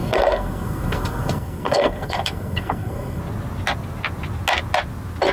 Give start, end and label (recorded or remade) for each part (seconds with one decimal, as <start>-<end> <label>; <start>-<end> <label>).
0.0-3.2 remade; 3.2-5.3 recorded